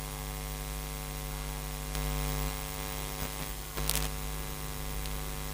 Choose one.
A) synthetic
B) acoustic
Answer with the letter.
B